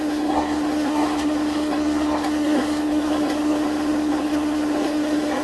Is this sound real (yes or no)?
no